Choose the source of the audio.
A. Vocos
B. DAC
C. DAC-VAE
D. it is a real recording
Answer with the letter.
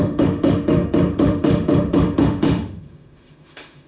C